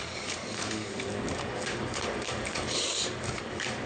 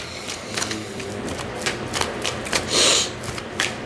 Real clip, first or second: second